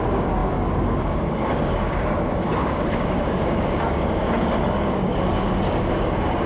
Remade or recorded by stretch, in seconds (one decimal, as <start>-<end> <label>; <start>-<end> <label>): 0.0-6.5 remade